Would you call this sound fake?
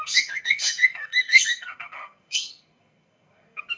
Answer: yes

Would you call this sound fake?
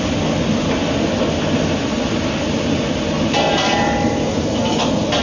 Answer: no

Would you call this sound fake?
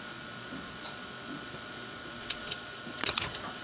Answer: yes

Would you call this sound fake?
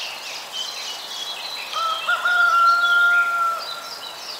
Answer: no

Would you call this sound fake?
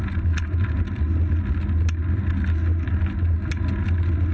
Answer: no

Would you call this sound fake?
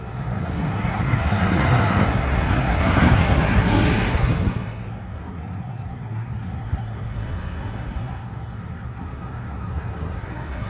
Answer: yes